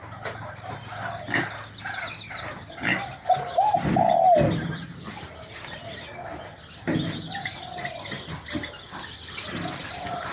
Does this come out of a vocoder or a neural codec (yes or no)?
no